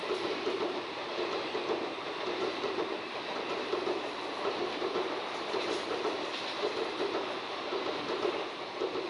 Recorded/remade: remade